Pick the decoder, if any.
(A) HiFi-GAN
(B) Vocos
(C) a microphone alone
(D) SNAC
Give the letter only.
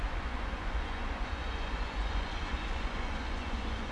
B